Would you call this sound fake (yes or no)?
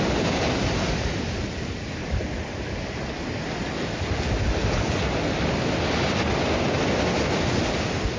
no